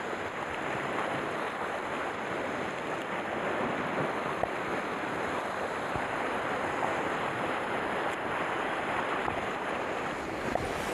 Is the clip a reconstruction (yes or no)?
no